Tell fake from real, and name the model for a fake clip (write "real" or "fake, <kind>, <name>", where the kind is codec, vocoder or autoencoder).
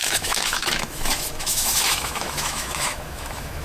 fake, autoencoder, DAC-VAE